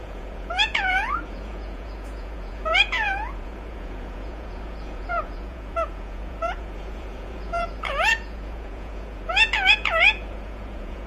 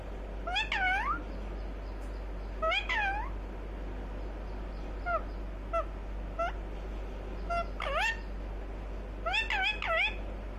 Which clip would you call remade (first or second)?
first